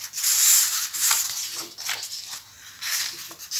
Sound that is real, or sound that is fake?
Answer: real